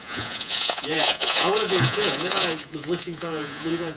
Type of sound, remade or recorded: remade